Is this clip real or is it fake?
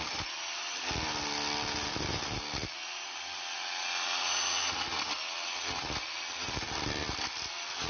real